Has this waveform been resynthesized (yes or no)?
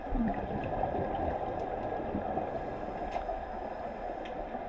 no